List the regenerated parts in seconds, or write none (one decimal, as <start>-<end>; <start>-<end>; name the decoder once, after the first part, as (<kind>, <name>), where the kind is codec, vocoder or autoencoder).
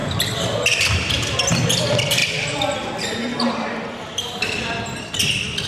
0.0-1.1 (vocoder, BigVGAN v2)